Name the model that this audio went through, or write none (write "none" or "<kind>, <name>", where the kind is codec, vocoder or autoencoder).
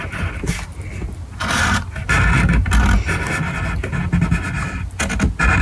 none